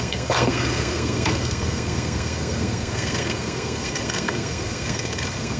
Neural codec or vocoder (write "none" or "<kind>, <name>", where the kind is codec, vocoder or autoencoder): codec, SNAC